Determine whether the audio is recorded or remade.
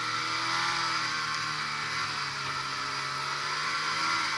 recorded